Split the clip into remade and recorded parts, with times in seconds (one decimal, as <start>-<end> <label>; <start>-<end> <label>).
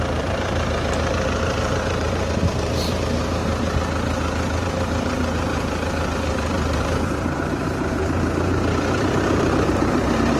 0.0-3.4 remade; 3.4-4.6 recorded; 4.6-5.5 remade; 5.5-6.1 recorded; 6.1-10.4 remade